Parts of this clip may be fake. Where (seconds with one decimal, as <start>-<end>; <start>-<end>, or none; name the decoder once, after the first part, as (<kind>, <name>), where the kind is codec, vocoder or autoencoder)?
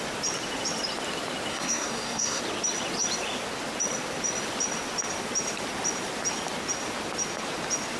1.5-2.4 (codec, SNAC)